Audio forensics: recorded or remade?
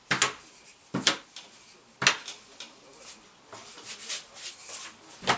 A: recorded